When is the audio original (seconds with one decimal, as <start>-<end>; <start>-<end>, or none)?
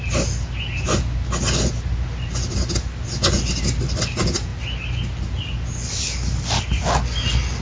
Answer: 0.0-7.6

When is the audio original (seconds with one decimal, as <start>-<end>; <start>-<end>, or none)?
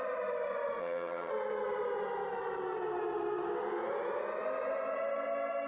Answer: 0.0-0.8; 1.3-5.7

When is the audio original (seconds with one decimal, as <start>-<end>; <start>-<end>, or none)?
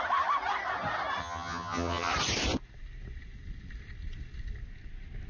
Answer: 0.0-1.2; 2.1-5.3